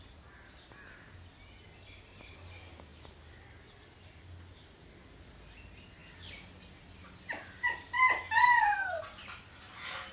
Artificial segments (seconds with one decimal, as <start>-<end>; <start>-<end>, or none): 8.4-9.0